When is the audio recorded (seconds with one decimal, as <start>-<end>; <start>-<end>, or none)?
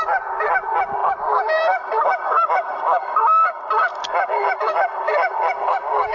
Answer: 0.0-6.1